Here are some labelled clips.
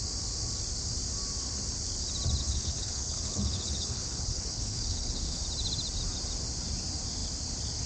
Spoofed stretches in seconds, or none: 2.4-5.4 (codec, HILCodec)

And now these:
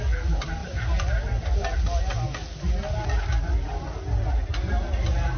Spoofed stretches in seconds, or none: none

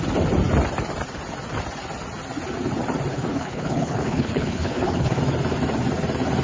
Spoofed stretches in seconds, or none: 3.1-5.2 (codec, HILCodec)